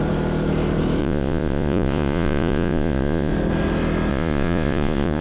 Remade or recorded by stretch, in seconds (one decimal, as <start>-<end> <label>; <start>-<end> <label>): 0.0-1.0 recorded; 1.0-3.3 remade; 3.3-4.1 recorded; 4.1-5.2 remade